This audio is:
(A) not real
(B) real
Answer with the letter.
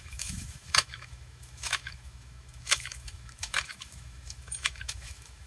A